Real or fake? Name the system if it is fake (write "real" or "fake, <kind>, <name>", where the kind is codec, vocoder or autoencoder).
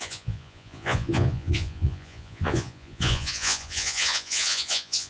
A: fake, vocoder, Vocos